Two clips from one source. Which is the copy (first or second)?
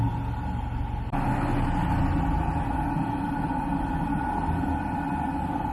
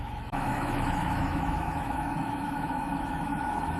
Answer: second